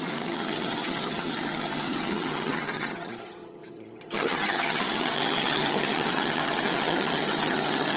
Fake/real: fake